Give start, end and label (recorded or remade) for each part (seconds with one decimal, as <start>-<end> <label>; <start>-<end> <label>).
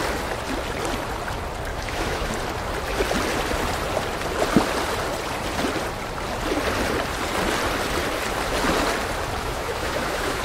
0.0-1.7 recorded; 1.7-2.3 remade; 2.3-9.4 recorded; 9.4-10.4 remade